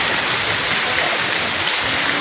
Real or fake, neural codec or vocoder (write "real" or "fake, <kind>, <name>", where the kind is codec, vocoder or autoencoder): real